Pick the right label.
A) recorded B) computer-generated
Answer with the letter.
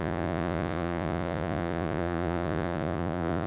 B